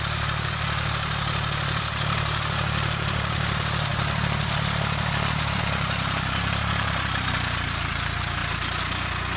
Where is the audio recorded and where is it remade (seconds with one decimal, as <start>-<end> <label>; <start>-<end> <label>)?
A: 0.0-8.4 remade; 8.4-9.4 recorded